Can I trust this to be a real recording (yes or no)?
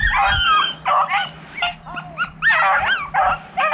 yes